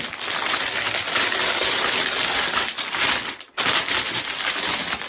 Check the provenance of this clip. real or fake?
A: real